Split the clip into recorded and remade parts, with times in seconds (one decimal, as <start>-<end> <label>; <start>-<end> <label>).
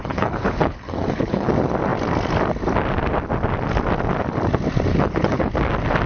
0.0-1.5 remade; 1.5-4.9 recorded; 4.9-5.5 remade; 5.5-6.1 recorded